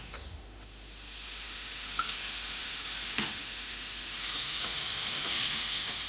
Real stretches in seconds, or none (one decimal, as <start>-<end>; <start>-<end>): none